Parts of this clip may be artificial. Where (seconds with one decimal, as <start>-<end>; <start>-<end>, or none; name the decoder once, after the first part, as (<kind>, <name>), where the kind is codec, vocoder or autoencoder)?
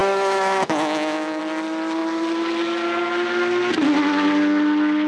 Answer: 0.0-1.4 (autoencoder, DAC-VAE)